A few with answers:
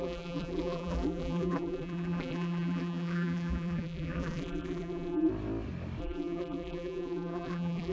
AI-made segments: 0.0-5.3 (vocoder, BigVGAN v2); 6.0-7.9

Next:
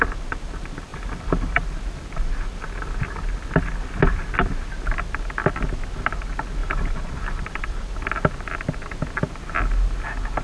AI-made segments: 0.9-1.6 (vocoder, BigVGAN v2); 6.6-8.0